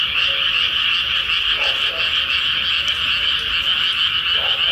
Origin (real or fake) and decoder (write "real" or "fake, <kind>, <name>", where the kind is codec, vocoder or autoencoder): real